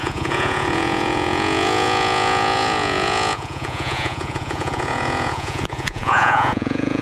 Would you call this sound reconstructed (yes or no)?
yes